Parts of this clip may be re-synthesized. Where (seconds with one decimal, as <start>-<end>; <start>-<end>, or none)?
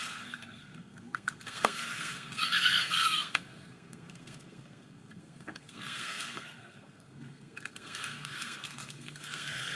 0.0-9.8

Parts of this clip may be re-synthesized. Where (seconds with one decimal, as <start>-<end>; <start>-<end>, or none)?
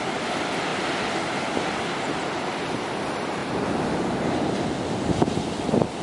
none